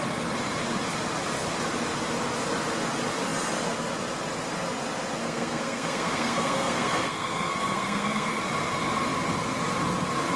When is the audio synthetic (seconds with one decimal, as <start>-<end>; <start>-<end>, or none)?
5.2-8.4